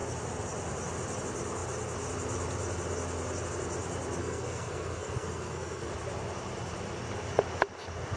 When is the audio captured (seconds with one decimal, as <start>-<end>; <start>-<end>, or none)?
0.0-4.2; 5.9-8.2

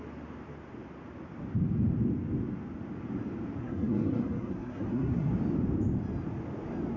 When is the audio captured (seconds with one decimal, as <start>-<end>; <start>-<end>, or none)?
0.0-3.6; 5.3-7.0

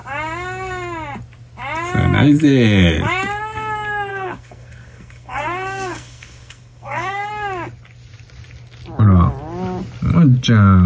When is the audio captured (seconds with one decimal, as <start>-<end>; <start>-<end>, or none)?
0.0-4.1; 7.3-10.9

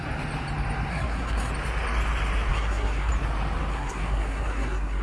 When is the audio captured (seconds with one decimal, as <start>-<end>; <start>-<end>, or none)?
0.0-0.9; 1.5-2.5; 3.1-3.7

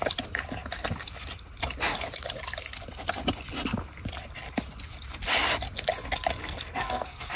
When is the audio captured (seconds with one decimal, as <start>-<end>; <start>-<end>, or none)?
0.0-6.4

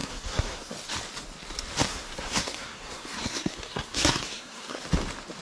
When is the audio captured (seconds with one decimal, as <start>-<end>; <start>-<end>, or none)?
0.7-1.9; 4.8-5.4

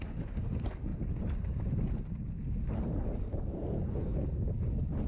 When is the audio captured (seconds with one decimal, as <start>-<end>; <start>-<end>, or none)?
0.0-5.1

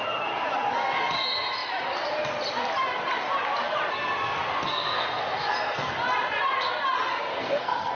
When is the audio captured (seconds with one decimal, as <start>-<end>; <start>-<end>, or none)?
0.0-4.6; 5.9-7.3